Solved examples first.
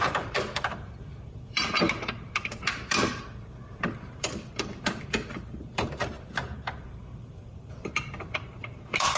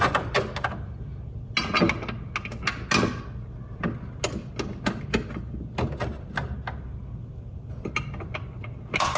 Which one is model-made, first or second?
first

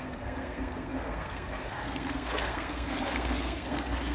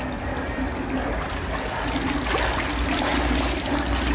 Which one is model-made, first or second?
first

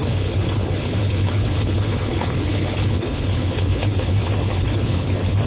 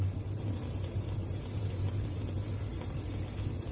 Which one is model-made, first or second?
first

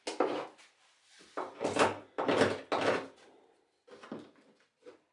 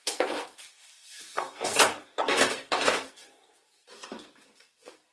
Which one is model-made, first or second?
second